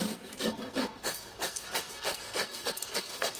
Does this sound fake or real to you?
fake